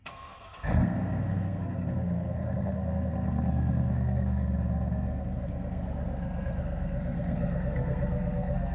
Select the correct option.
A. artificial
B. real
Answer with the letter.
A